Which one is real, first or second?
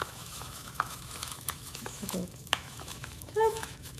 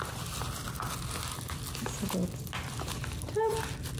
second